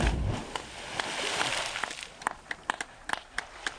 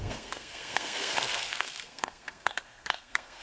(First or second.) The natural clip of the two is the first